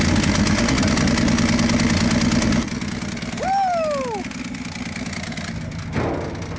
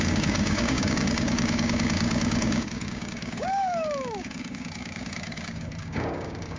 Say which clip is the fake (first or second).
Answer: second